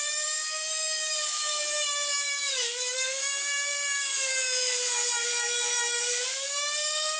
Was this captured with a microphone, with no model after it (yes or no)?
no